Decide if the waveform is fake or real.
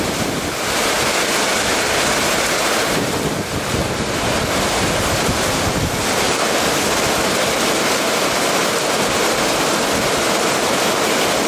real